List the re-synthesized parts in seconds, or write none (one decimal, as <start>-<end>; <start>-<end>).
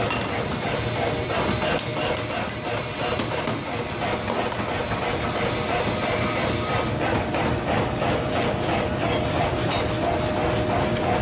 none